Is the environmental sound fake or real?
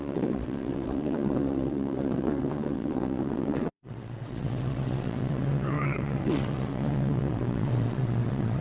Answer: fake